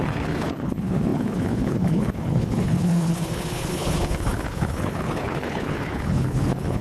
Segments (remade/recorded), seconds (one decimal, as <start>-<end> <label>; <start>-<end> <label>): 0.0-6.8 remade